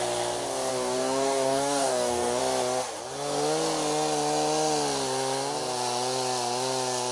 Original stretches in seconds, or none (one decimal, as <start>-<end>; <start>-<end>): 0.0-0.7; 2.4-7.1